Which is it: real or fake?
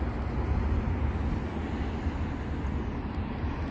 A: real